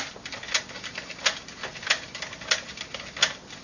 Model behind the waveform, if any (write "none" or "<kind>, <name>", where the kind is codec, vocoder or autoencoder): none